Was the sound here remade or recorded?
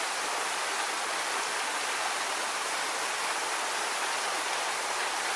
recorded